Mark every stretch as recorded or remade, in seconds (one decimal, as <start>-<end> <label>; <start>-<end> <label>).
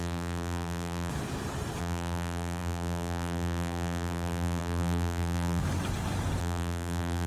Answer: 0.0-1.1 remade; 1.1-1.8 recorded; 1.8-5.6 remade; 5.6-6.4 recorded; 6.4-7.3 remade